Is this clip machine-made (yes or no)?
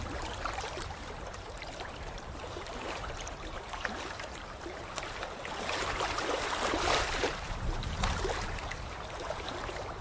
yes